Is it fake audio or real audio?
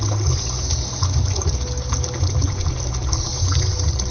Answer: real